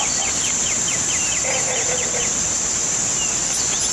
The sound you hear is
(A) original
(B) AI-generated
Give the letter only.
A